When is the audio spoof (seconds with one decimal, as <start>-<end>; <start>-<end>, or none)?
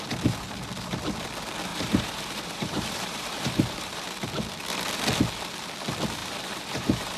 1.7-4.0; 6.2-7.2